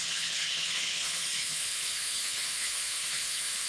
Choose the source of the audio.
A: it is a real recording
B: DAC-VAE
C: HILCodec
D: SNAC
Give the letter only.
C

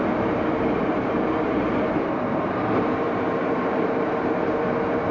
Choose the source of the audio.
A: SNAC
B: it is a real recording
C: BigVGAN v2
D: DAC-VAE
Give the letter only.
C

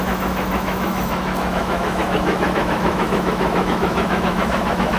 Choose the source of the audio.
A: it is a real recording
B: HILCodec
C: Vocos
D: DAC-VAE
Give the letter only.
D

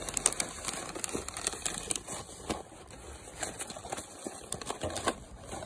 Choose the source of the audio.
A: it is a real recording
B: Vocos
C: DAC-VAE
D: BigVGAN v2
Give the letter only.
A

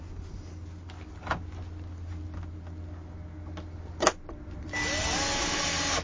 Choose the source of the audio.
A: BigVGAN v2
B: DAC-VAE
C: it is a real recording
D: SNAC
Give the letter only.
C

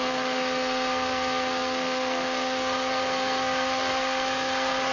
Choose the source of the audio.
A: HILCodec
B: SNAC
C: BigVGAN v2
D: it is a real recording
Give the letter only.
B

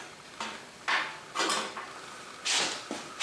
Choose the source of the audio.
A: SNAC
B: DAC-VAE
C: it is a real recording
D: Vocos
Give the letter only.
C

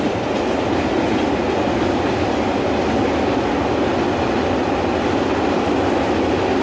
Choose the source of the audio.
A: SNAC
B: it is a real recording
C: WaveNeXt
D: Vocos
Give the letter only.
B